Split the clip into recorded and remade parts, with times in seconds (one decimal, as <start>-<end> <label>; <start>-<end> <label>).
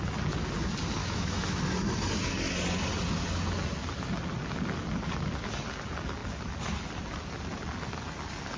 0.0-1.0 recorded; 1.0-1.6 remade; 1.6-8.6 recorded